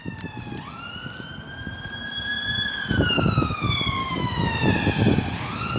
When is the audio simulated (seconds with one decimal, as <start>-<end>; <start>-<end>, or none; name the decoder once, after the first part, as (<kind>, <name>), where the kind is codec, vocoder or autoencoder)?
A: 4.0-4.7 (autoencoder, DAC-VAE)